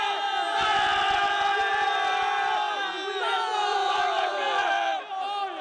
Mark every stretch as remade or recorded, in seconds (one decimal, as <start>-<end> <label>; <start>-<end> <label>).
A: 0.0-3.7 recorded; 3.7-5.0 remade; 5.0-5.6 recorded